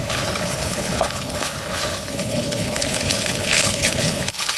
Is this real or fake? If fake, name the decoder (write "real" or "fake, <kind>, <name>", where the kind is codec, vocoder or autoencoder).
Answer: fake, codec, HILCodec